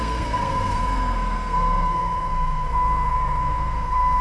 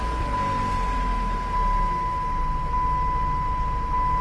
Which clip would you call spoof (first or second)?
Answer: first